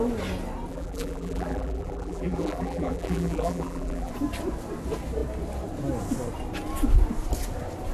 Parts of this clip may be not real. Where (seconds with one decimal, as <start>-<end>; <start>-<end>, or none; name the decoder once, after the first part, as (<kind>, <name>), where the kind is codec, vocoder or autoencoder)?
0.7-4.1 (vocoder, BigVGAN v2)